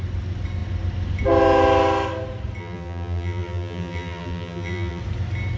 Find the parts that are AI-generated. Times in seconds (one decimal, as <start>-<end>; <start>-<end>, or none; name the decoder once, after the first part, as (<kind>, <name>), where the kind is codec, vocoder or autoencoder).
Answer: 2.6-5.0 (vocoder, BigVGAN v2)